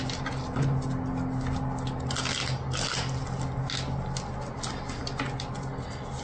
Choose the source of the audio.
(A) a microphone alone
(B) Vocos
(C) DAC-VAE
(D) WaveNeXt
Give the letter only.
A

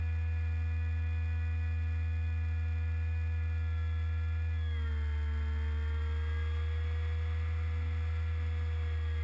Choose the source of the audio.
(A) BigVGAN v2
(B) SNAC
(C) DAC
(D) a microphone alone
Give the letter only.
D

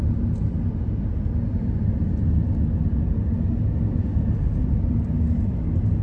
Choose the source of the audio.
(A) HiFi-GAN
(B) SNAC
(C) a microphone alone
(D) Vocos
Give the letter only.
C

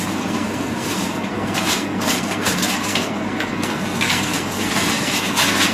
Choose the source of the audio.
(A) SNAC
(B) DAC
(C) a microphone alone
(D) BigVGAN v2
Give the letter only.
A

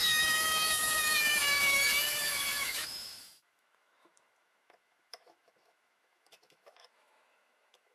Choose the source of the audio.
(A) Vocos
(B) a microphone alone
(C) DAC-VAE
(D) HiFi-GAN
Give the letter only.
C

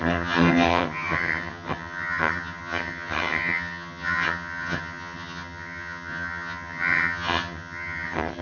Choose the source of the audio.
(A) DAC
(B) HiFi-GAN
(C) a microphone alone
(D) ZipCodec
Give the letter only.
B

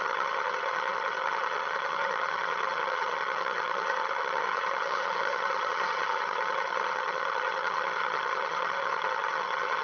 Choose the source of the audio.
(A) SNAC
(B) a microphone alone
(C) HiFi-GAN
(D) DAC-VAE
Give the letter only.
C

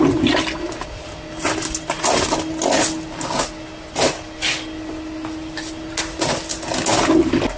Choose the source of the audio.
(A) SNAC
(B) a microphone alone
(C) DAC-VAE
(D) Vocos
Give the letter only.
B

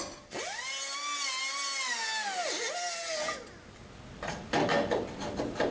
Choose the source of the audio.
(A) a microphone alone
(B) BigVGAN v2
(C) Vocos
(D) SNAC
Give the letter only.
A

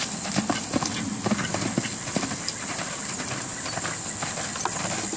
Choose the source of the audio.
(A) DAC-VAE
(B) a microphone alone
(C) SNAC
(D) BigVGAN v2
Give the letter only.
B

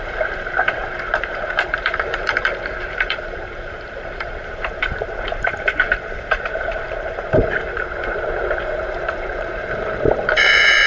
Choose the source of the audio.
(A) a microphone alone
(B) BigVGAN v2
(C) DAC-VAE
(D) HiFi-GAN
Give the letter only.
B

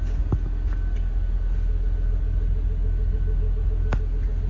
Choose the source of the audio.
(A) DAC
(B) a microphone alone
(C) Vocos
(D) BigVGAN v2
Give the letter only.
B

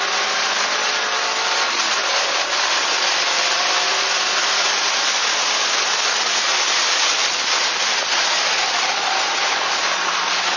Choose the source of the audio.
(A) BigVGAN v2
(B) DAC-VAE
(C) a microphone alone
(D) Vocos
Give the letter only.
A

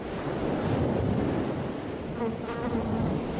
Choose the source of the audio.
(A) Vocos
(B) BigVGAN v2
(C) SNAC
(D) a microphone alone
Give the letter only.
D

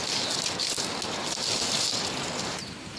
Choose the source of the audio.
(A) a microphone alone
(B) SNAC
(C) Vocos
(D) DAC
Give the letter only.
A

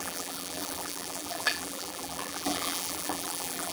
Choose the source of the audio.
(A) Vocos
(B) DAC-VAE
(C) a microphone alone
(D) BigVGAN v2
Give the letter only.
D